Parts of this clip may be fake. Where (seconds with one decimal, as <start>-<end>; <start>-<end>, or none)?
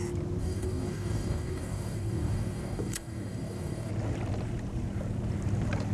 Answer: 0.4-3.9